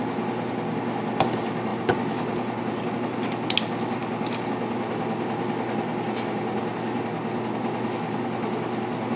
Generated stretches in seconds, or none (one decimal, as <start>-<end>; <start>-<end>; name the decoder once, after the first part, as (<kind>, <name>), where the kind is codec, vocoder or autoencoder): none